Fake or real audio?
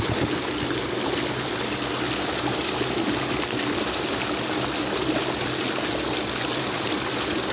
real